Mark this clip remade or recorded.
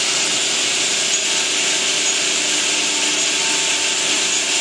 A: recorded